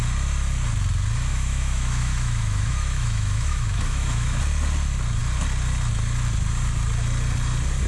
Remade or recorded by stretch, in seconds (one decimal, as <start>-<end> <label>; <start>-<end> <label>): 0.0-1.3 recorded; 1.3-4.4 remade; 4.4-7.9 recorded